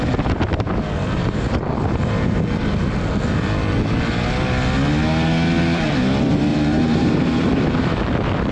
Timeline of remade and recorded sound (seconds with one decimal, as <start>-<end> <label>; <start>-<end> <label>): 0.0-1.2 recorded; 1.2-1.9 remade; 1.9-6.5 recorded; 6.5-8.5 remade